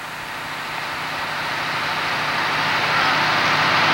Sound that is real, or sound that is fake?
real